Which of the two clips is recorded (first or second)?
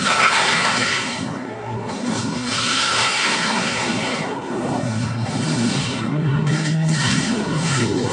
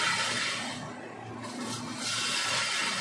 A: second